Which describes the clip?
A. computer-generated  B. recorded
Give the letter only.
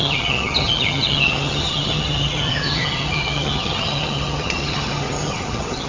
A